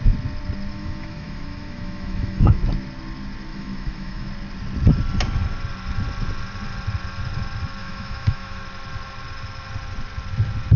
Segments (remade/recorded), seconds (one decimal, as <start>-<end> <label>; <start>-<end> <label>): 0.0-0.7 recorded; 0.7-2.6 remade; 2.6-3.5 recorded; 3.5-4.3 remade; 4.3-7.8 recorded; 7.8-8.6 remade; 8.6-10.8 recorded